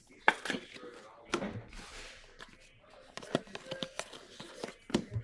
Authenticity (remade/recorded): recorded